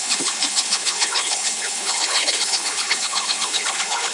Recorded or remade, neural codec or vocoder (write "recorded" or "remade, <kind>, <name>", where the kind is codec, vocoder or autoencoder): remade, codec, HILCodec